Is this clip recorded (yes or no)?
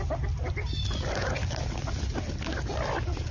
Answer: yes